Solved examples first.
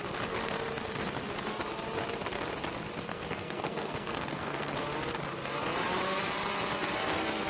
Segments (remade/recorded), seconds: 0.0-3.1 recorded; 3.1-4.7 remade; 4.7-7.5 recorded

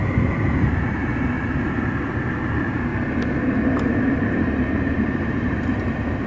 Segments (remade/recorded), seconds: 0.0-0.7 recorded; 0.7-1.1 remade; 1.1-2.5 recorded; 2.5-2.9 remade; 2.9-4.1 recorded; 4.1-6.3 remade

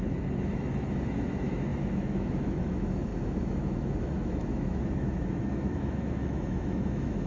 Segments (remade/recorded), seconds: 0.0-7.3 remade